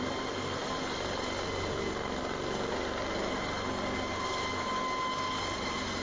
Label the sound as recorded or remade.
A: recorded